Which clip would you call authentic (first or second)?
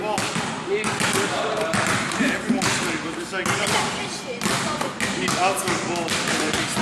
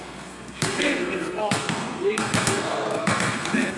first